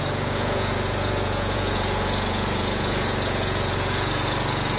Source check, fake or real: fake